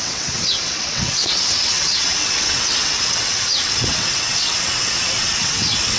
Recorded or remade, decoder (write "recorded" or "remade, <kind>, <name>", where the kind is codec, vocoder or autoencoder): remade, vocoder, WaveNeXt